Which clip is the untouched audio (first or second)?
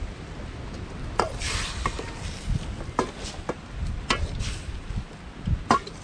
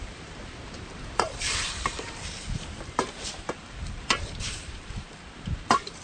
first